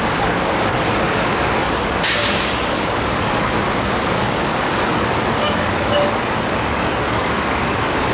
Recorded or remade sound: remade